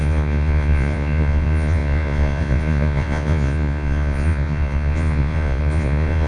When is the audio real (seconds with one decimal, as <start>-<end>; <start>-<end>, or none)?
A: none